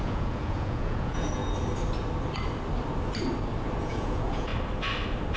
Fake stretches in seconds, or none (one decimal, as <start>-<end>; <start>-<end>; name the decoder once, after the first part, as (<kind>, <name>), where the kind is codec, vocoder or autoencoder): 0.0-1.4 (vocoder, Vocos); 3.8-4.5